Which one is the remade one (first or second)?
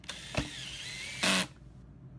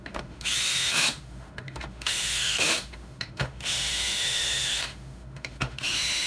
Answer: second